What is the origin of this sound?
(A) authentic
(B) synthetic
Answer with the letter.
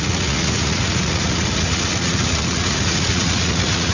B